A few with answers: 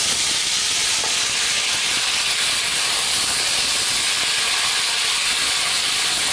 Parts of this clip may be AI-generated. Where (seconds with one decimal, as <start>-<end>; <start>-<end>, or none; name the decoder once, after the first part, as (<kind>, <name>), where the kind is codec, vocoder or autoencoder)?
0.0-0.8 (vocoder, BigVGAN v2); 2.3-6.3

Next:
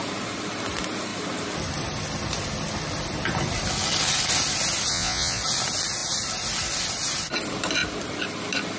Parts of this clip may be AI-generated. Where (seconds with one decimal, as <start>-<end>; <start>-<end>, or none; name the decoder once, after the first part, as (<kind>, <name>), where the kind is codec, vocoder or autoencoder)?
4.9-5.4 (vocoder, Vocos)

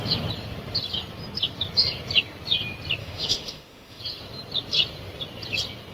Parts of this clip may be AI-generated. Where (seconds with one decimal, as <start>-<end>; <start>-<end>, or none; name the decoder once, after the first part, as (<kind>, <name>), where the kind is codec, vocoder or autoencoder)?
3.0-4.0 (autoencoder, DAC-VAE)

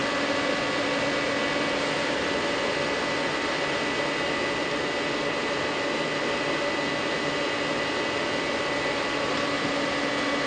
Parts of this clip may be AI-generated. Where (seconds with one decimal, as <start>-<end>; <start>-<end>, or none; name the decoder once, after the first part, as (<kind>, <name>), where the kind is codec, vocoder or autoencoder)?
none

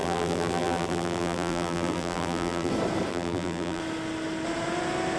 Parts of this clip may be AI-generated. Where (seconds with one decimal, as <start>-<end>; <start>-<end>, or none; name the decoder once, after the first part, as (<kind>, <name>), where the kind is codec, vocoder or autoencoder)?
0.0-2.7 (vocoder, BigVGAN v2); 3.1-3.8

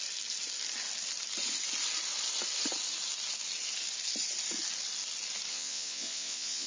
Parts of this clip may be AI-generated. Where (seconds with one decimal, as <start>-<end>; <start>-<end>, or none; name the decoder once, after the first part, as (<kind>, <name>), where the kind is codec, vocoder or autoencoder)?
5.5-6.7 (vocoder, Vocos)